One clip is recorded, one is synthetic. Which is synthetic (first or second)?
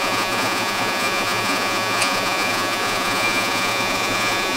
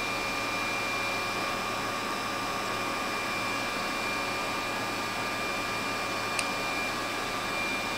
first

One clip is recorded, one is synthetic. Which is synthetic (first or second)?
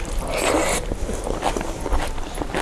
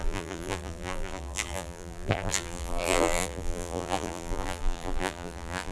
second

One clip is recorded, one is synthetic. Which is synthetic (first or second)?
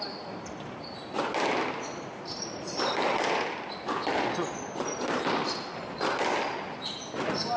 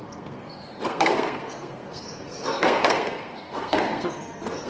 second